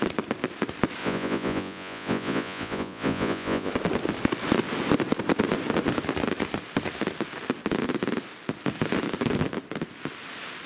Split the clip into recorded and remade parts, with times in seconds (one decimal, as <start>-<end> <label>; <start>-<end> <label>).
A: 0.0-1.0 recorded; 1.0-3.7 remade; 3.7-10.7 recorded